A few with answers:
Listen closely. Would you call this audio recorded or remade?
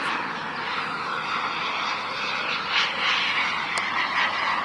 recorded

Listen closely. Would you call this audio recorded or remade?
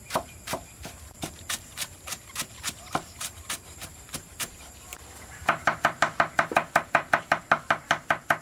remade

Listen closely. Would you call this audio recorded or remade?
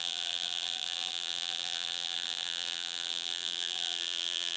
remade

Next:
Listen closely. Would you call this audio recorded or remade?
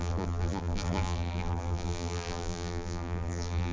remade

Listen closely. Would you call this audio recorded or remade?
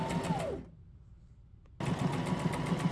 recorded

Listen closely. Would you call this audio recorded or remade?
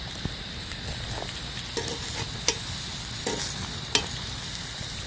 recorded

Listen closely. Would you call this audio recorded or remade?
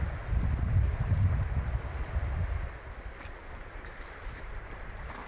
recorded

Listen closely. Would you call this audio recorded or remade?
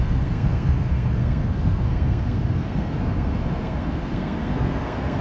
remade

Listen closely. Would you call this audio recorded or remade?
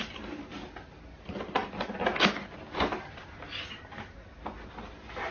recorded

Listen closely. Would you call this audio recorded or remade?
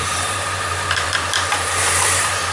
remade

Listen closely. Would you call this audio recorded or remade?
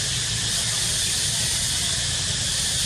recorded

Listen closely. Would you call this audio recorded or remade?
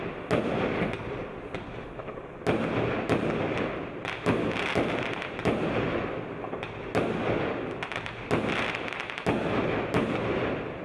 recorded